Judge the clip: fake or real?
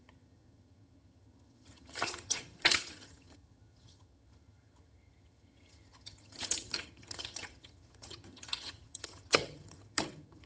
fake